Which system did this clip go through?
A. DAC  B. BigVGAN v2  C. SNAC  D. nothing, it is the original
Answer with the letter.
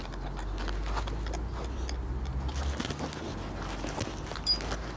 D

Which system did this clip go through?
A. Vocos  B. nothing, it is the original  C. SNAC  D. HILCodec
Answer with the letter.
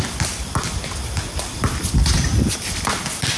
B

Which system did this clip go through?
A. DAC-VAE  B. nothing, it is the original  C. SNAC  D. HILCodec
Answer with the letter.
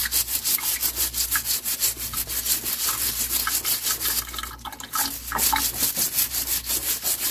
B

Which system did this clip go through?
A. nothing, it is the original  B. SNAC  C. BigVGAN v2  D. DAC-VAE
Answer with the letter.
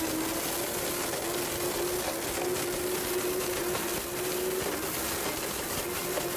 A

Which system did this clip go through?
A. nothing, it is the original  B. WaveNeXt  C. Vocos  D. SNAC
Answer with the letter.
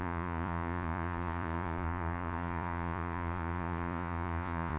C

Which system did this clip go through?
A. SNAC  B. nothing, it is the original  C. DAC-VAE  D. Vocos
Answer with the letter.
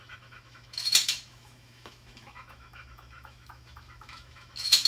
C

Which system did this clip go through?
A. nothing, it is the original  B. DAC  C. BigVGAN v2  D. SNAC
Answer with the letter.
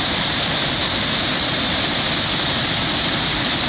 A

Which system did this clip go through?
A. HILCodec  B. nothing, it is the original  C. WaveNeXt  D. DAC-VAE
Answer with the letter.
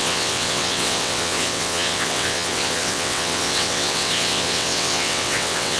C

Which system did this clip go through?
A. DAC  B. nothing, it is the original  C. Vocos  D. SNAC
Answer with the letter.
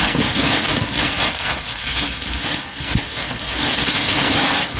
D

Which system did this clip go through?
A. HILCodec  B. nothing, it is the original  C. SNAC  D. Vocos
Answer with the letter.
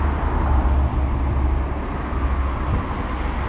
B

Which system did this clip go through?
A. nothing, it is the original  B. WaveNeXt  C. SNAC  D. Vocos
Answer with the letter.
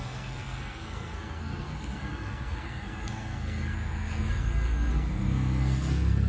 C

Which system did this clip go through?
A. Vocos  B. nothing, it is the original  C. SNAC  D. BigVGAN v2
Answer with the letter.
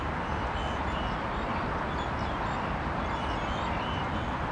B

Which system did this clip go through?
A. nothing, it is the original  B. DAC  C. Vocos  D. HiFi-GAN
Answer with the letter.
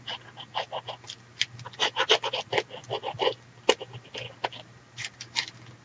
A